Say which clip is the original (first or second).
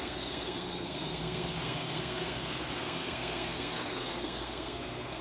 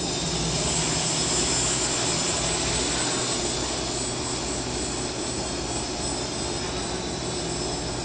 second